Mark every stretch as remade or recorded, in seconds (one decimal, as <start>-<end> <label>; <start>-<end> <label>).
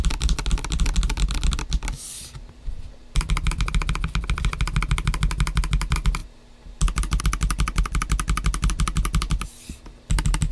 0.0-10.5 recorded